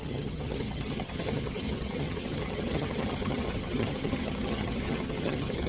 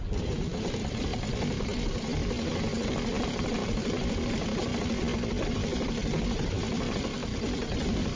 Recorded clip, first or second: second